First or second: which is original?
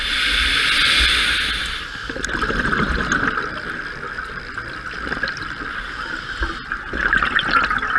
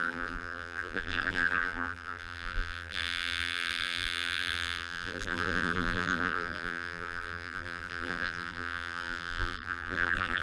first